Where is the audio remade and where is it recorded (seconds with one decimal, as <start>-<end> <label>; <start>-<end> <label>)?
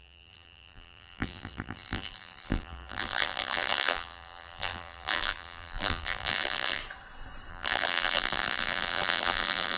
0.0-6.8 remade; 6.8-7.5 recorded; 7.5-9.8 remade